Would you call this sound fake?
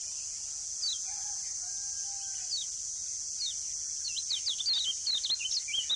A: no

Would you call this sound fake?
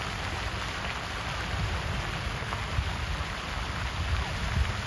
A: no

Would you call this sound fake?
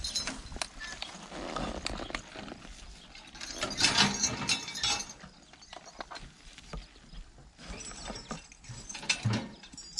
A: no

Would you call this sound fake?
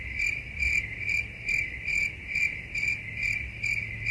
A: no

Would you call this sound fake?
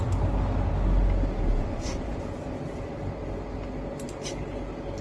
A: no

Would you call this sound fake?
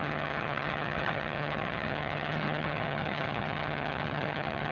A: yes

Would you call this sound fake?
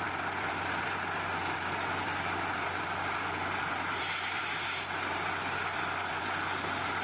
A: yes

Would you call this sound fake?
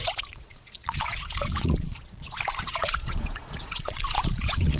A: yes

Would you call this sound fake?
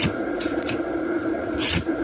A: yes